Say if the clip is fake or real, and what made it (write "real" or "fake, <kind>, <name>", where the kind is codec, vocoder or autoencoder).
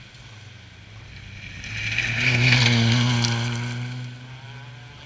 real